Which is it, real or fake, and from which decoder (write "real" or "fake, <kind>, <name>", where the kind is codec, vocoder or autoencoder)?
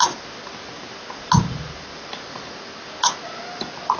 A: real